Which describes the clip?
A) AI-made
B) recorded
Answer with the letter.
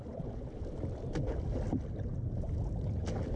B